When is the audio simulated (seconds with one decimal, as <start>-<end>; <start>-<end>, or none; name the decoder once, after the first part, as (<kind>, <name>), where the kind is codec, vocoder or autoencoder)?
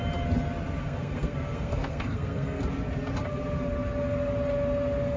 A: 0.8-2.6 (codec, SNAC)